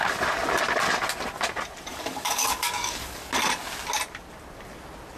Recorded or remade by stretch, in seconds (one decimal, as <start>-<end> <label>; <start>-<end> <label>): 0.0-1.9 recorded; 1.9-3.3 remade; 3.3-5.2 recorded